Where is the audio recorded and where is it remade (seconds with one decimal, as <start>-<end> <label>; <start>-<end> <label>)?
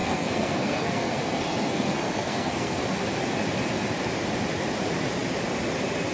0.0-2.8 remade; 2.8-6.1 recorded